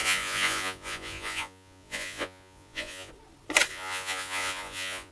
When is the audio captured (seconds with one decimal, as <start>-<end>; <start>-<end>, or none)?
3.1-3.7